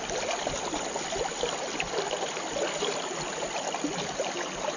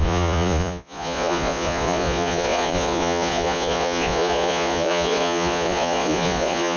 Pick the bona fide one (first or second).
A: first